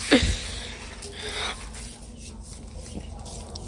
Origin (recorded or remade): recorded